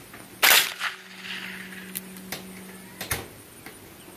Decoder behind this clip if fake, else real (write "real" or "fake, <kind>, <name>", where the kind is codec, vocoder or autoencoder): real